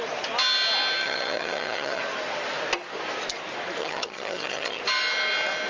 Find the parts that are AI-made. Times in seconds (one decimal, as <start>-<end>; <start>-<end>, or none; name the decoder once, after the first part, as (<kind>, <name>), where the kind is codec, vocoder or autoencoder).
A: 1.0-2.0 (vocoder, HiFi-GAN); 3.8-4.8